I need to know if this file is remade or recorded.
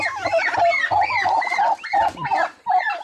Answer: recorded